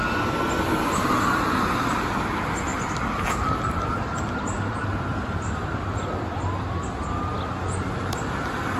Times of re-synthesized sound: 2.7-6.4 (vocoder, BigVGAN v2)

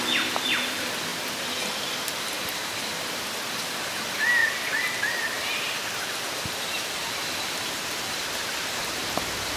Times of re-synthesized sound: 4.4-5.0 (vocoder, BigVGAN v2)

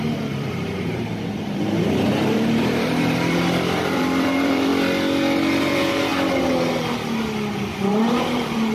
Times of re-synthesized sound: 0.0-4.7 (vocoder, BigVGAN v2); 5.6-6.1; 7.8-8.7